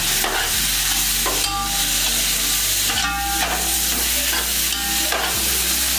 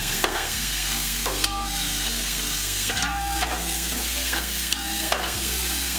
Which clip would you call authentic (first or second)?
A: first